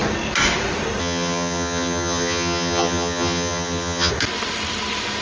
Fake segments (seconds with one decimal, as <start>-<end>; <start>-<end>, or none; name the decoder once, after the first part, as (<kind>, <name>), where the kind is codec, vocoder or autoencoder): 1.0-4.1 (vocoder, HiFi-GAN)